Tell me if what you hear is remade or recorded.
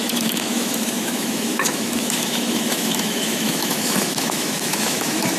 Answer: remade